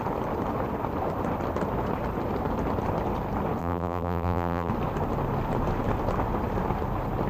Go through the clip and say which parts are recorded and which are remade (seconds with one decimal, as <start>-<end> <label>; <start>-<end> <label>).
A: 0.0-3.6 recorded; 3.6-4.7 remade; 4.7-7.3 recorded